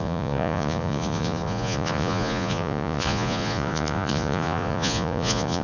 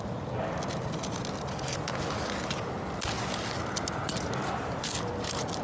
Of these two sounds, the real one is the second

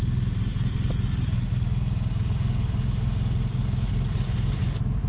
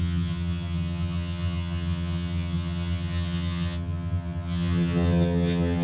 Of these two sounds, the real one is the first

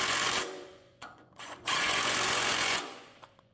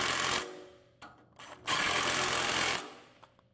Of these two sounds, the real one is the second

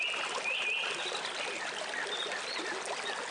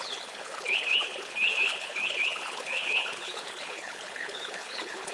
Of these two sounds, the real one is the first